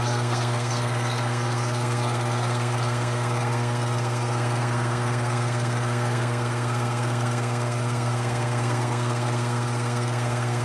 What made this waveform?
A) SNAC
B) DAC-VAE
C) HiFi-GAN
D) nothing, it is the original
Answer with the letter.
A